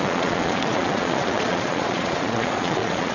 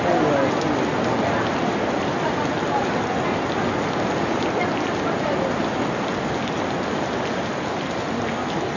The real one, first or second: second